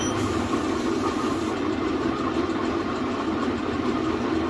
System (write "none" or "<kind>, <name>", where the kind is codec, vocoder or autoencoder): vocoder, BigVGAN v2